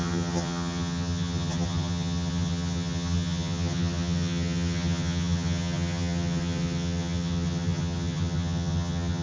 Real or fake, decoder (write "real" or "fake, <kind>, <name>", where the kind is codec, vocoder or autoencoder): fake, vocoder, HiFi-GAN